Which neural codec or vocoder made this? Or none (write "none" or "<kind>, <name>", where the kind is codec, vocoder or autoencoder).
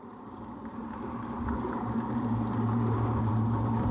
vocoder, BigVGAN v2